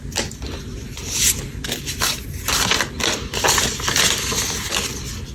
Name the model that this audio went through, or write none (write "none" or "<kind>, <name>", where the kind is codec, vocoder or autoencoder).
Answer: none